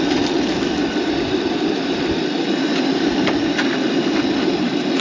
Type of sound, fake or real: fake